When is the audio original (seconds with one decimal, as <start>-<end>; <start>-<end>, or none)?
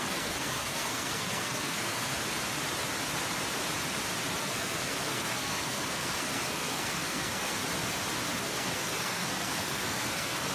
2.2-4.4; 7.6-8.4